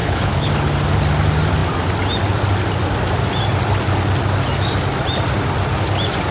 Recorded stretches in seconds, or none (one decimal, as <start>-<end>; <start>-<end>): 0.5-6.3